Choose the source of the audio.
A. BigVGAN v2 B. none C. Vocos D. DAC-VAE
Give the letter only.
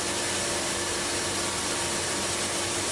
B